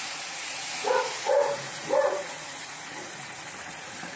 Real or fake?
fake